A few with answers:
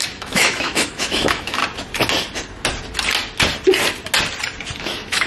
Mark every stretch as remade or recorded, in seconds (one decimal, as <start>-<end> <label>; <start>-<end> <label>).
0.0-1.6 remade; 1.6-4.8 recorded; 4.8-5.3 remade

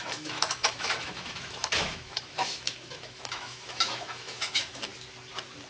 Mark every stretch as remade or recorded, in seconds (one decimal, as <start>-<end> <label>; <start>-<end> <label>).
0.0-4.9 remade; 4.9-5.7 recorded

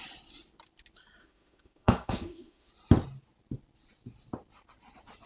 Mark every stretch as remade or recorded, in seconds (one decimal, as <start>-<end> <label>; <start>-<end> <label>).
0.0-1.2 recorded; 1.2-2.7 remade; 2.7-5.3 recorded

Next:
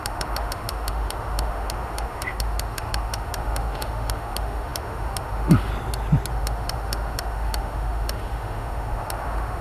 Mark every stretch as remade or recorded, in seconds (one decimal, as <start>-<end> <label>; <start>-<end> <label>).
0.0-5.7 remade; 5.7-6.3 recorded; 6.3-9.6 remade

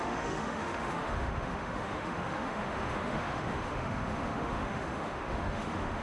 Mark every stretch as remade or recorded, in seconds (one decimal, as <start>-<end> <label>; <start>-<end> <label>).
0.0-6.0 remade

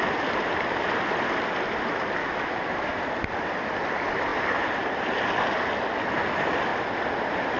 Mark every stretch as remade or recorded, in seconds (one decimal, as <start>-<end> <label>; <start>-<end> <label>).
0.0-2.2 recorded; 2.2-3.0 remade; 3.0-7.6 recorded